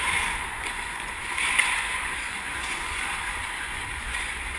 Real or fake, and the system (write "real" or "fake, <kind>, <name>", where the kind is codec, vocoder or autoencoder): fake, vocoder, Vocos